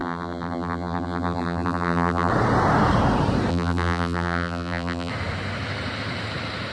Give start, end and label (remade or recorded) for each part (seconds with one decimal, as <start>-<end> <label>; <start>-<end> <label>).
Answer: 0.0-2.3 remade; 2.3-3.5 recorded; 3.5-5.1 remade; 5.1-6.7 recorded